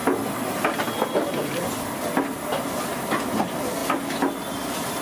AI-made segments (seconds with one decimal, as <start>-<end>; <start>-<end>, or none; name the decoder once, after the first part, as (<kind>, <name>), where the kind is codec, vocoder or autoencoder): none